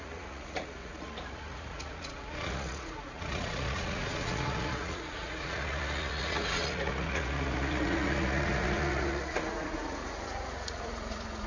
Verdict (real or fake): fake